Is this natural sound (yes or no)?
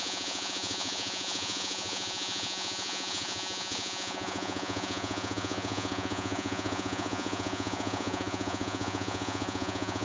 no